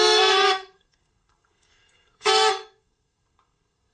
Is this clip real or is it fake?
fake